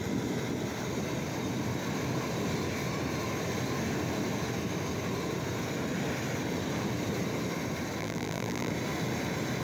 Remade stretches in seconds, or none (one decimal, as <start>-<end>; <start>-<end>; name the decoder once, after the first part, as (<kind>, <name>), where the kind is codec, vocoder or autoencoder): 8.0-8.7 (vocoder, BigVGAN v2)